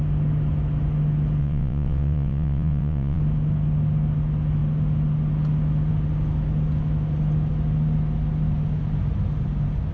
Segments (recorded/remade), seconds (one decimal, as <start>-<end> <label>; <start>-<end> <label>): 0.0-1.4 recorded; 1.4-3.2 remade; 3.2-9.9 recorded